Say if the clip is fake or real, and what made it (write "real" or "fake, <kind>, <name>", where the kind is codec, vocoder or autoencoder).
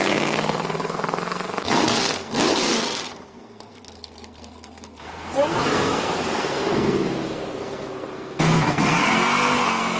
fake, codec, SNAC